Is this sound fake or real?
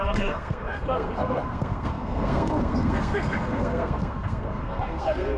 fake